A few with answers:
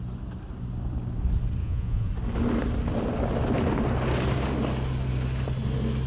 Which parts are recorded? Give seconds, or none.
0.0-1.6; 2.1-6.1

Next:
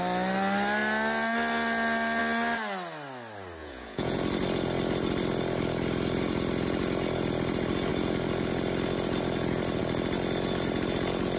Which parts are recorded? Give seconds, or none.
0.0-3.6; 4.2-11.4